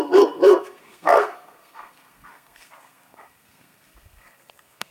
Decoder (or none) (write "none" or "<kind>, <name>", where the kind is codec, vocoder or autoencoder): codec, SNAC